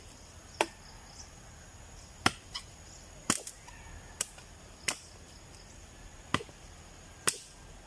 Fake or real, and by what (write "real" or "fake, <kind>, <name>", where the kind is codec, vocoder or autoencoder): real